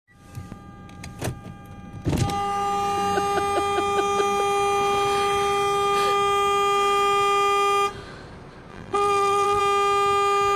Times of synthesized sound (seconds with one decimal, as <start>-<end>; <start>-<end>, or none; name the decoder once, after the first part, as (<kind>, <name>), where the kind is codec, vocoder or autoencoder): 8.7-9.6 (vocoder, BigVGAN v2)